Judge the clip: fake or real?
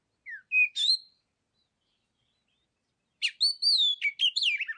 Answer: real